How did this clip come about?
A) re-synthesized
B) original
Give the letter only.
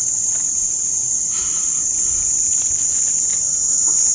B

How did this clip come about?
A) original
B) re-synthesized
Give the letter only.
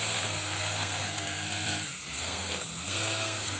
B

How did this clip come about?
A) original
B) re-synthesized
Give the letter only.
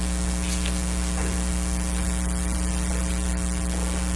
A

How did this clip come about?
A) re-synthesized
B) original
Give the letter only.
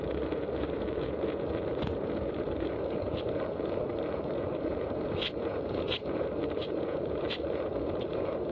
A